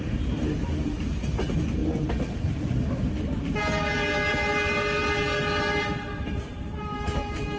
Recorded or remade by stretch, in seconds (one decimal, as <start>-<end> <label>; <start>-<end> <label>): 0.0-1.8 remade; 1.8-4.3 recorded; 4.3-5.0 remade; 5.0-6.2 recorded; 6.2-7.6 remade